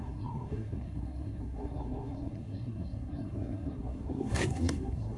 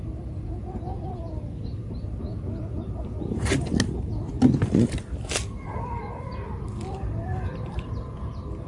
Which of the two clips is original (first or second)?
second